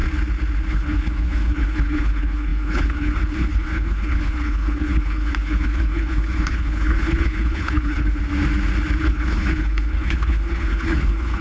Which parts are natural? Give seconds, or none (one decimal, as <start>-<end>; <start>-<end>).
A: 0.0-0.7; 8.2-9.0